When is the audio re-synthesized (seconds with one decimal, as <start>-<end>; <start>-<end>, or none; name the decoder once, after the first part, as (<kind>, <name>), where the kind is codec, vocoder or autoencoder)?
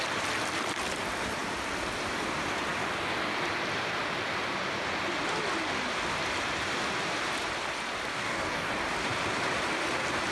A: 8.1-8.7 (codec, DAC)